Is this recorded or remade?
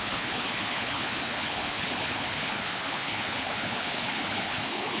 remade